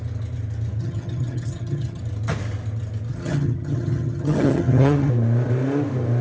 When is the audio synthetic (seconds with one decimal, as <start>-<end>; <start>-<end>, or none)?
0.8-2.0; 3.1-5.1